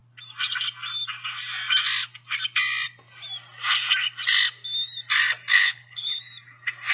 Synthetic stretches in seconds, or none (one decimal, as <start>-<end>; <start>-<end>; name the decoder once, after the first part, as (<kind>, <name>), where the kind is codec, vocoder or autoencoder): 5.5-6.2 (codec, HILCodec)